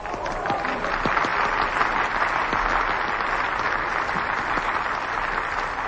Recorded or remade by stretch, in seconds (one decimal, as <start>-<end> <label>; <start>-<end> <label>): 0.0-5.9 recorded